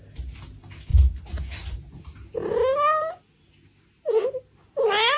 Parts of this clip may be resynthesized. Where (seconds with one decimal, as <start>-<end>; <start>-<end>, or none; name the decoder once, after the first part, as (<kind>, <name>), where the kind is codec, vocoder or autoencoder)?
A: none